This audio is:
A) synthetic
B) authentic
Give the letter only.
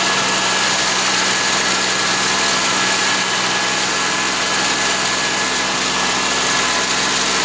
B